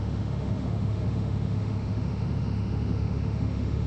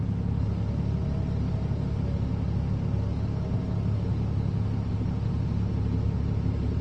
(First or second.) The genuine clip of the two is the second